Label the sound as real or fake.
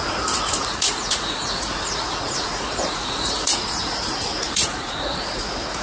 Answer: fake